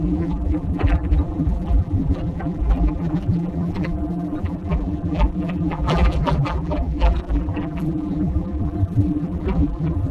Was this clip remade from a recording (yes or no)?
yes